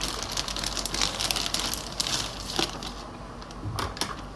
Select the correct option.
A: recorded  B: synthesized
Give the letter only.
A